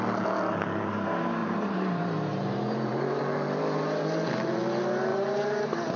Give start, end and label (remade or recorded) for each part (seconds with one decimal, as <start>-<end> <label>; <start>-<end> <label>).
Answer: 0.0-1.4 recorded; 1.4-3.2 remade; 3.2-5.1 recorded; 5.1-6.0 remade